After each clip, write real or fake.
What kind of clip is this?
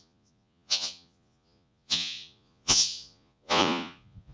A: fake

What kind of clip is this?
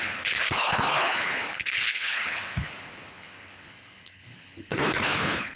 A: fake